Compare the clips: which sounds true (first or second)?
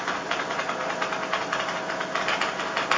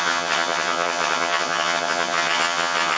first